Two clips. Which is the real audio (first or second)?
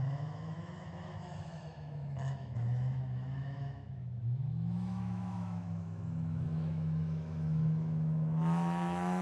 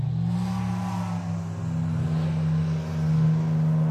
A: second